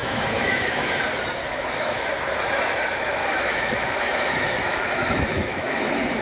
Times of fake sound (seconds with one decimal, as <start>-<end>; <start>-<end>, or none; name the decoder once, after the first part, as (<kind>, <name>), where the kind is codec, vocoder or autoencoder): 0.0-1.0 (autoencoder, DAC-VAE); 1.5-2.1; 3.2-5.8

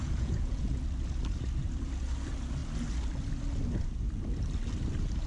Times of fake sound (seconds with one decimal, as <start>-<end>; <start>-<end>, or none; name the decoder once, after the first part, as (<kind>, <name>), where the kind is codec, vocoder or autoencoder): 0.0-0.8 (vocoder, Vocos)

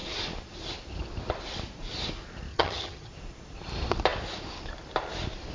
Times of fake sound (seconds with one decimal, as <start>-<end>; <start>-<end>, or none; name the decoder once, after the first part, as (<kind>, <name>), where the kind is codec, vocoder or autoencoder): 2.5-3.1 (vocoder, HiFi-GAN)

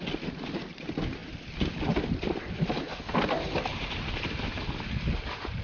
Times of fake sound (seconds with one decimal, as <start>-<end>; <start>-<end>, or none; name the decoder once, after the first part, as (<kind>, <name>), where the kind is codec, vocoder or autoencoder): 1.2-2.4 (vocoder, BigVGAN v2); 3.7-4.5

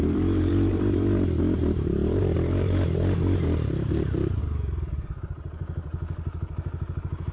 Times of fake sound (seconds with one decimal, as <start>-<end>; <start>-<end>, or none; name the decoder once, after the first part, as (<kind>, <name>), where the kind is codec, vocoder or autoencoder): 0.0-4.4 (vocoder, BigVGAN v2)

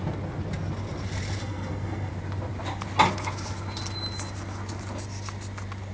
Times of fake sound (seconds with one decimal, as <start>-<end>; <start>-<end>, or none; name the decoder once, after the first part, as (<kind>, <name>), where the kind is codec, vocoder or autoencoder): 1.4-2.1 (codec, SNAC)

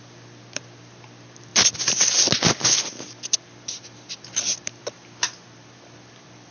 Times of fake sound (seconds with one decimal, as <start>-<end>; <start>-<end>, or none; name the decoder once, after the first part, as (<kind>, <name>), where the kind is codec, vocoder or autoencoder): none

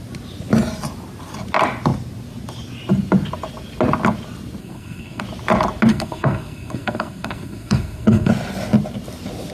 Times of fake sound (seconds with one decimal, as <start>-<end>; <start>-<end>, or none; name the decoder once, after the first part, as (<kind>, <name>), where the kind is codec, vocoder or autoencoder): 4.6-5.2 (codec, SNAC); 5.9-8.3